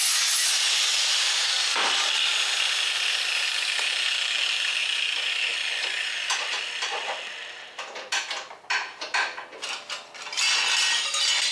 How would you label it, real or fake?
real